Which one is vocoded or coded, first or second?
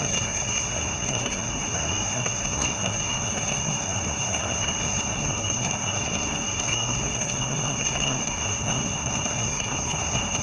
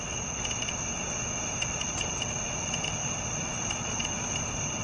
first